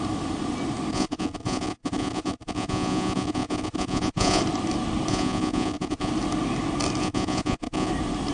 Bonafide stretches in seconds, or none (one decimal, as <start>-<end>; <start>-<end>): 0.0-0.9; 4.4-5.1; 6.1-7.0; 7.9-8.3